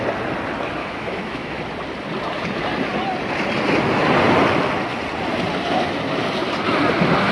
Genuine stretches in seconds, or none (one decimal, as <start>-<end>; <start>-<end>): 0.0-0.8; 1.6-7.3